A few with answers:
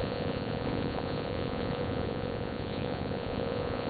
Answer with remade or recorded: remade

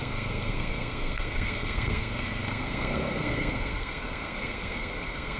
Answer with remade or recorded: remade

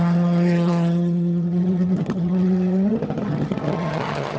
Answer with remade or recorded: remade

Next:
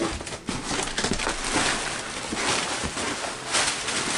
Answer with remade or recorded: recorded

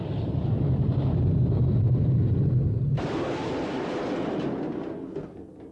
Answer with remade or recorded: recorded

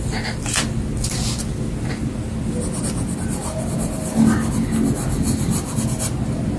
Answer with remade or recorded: recorded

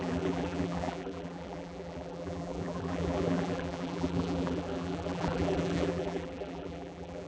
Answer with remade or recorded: remade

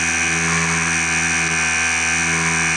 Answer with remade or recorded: recorded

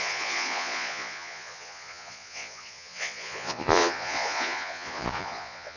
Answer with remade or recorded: remade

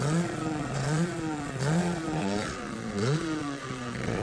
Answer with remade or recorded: remade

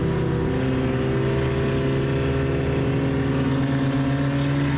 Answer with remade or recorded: recorded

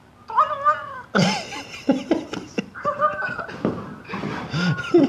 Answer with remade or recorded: recorded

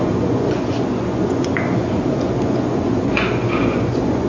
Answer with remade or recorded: remade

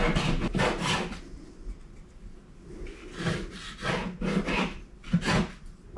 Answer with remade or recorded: recorded